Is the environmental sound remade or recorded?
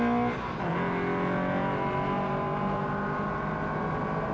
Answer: recorded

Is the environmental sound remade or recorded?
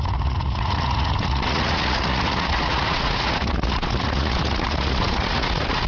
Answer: remade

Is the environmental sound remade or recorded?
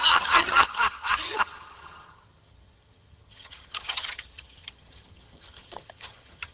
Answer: remade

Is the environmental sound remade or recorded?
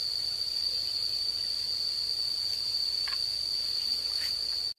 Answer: recorded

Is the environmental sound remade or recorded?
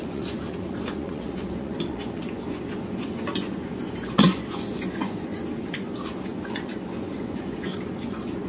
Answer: remade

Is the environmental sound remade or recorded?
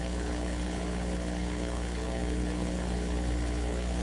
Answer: remade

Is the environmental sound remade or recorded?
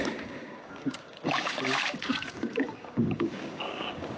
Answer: remade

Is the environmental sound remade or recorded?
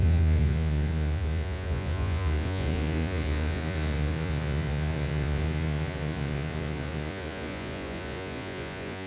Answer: remade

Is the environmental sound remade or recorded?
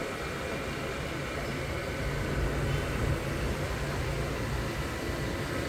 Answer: recorded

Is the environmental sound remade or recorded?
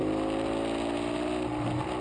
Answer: recorded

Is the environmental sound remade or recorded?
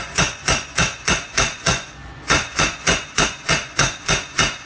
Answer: remade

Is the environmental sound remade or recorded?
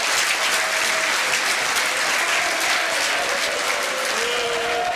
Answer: recorded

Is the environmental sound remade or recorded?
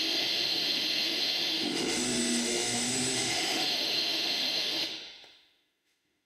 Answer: remade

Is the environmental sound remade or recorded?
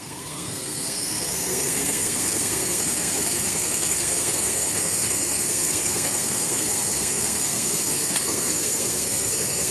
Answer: remade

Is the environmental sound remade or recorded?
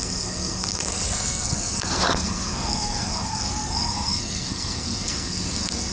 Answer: remade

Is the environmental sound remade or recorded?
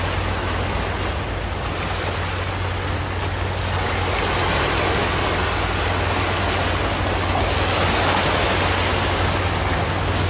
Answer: recorded